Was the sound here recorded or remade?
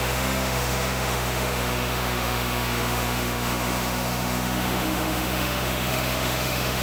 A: remade